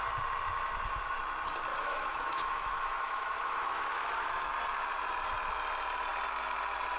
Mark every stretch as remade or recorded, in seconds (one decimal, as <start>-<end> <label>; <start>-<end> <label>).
0.0-1.7 recorded; 1.7-4.5 remade; 4.5-7.0 recorded